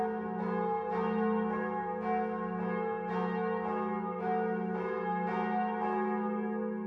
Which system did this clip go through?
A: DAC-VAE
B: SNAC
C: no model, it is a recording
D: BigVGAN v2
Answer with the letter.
C